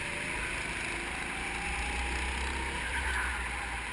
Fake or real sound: real